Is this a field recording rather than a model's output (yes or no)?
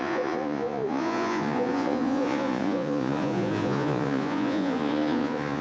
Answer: no